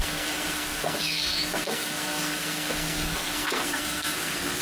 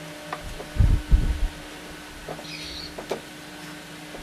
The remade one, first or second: first